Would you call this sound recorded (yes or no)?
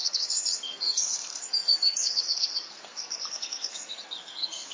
no